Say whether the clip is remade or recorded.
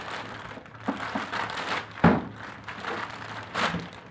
remade